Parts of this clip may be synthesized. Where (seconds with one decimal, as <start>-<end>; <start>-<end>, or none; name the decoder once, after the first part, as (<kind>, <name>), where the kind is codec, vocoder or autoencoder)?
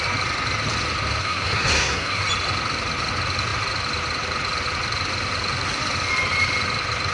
1.2-2.2 (codec, SNAC)